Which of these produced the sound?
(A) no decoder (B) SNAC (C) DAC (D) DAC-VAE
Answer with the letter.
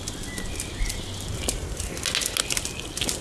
A